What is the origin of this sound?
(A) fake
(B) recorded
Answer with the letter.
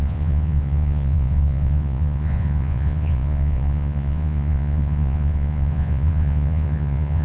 A